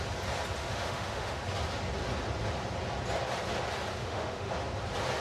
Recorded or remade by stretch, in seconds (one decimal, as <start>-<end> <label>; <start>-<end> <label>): 0.0-0.6 recorded; 0.6-1.4 remade; 1.4-4.0 recorded; 4.0-4.5 remade; 4.5-5.2 recorded